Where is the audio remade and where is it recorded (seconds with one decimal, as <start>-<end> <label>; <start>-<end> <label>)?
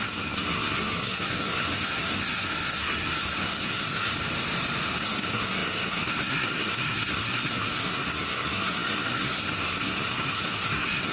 0.0-4.1 remade; 4.1-5.0 recorded; 5.0-11.1 remade